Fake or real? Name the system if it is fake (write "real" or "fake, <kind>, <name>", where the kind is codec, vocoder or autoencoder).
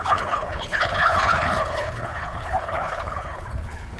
fake, codec, HILCodec